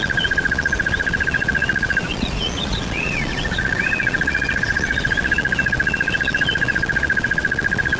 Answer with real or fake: fake